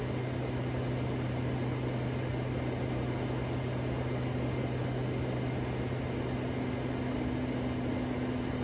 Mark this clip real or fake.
real